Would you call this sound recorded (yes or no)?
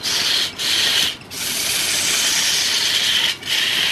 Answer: yes